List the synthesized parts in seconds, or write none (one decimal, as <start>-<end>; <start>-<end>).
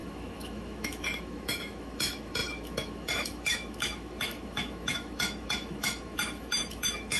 0.0-7.2